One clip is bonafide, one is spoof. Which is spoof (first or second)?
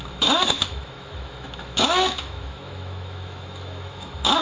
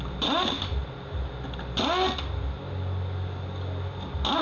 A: first